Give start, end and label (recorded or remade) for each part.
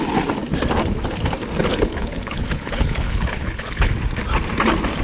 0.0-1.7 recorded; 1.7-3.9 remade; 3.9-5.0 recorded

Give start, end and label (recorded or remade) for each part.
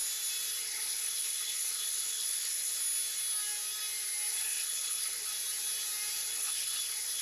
0.0-0.6 recorded; 0.6-2.8 remade; 2.8-4.3 recorded; 4.3-5.3 remade; 5.3-6.3 recorded; 6.3-7.2 remade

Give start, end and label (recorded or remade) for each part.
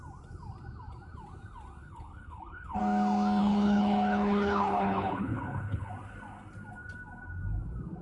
0.0-1.8 recorded; 1.8-2.8 remade; 2.8-3.4 recorded; 3.4-5.9 remade; 5.9-8.0 recorded